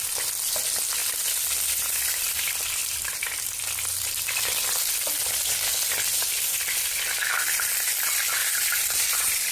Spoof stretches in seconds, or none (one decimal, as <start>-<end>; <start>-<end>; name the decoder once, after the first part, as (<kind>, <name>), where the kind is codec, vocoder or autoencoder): 2.8-3.6 (vocoder, BigVGAN v2); 8.4-9.5